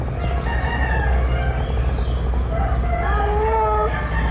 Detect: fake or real real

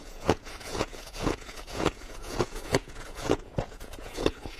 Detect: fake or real fake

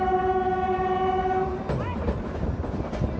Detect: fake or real real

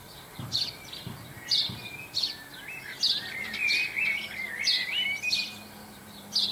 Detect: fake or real real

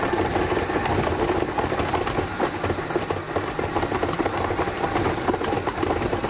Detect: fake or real real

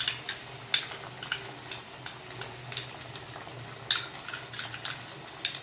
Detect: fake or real real